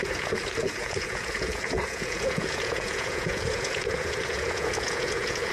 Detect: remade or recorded remade